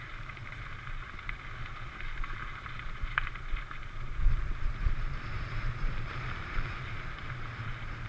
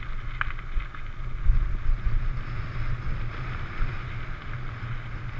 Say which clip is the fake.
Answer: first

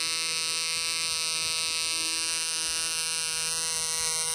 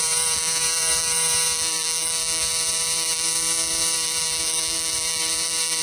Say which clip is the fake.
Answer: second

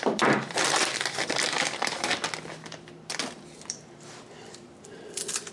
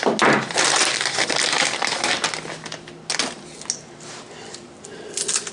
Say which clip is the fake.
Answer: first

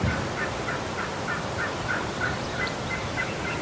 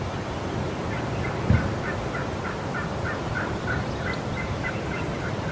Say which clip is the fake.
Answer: second